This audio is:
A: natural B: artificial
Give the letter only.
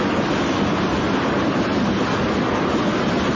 A